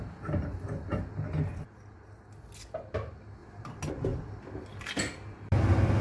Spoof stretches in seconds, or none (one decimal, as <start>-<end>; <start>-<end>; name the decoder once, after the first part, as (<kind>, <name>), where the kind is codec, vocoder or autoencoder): none